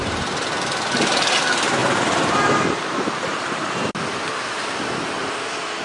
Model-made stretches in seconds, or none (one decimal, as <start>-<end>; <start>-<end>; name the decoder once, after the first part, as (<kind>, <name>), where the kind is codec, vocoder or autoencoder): 1.8-3.9 (vocoder, BigVGAN v2)